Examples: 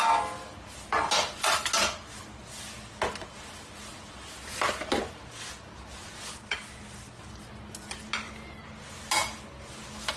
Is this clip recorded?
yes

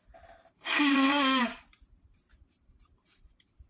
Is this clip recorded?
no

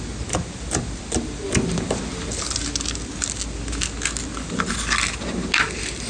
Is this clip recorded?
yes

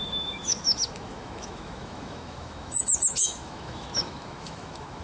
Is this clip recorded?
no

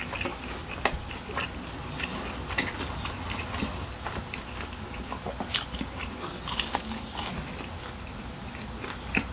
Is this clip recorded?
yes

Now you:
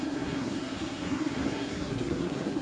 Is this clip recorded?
no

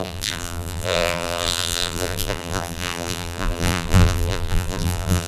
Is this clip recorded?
no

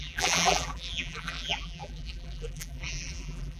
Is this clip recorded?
no